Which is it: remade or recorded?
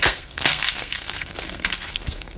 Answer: remade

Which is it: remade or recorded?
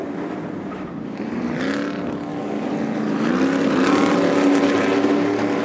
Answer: recorded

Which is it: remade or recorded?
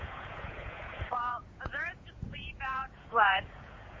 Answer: remade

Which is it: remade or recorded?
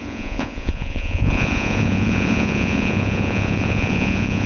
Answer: remade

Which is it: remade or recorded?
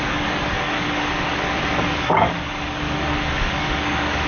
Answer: remade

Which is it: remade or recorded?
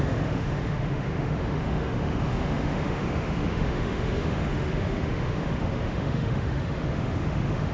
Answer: remade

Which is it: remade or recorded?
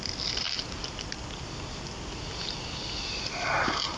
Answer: recorded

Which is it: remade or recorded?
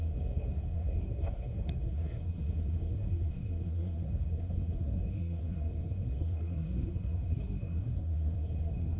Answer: remade